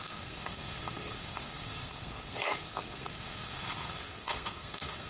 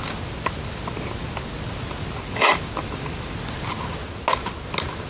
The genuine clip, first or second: second